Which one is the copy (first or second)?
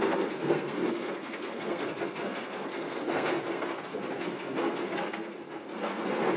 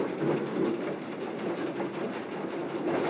first